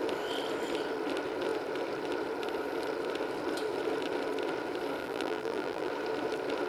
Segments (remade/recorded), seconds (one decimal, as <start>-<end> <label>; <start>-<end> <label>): 0.0-5.0 recorded; 5.0-5.9 remade; 5.9-6.7 recorded